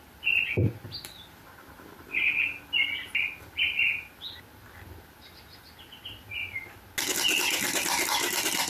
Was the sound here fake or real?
real